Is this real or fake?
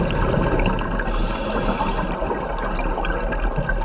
real